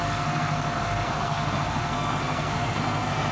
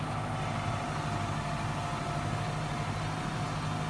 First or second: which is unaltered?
second